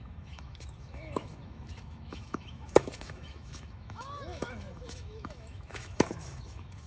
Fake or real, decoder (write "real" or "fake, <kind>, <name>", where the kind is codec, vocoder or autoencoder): fake, autoencoder, DAC-VAE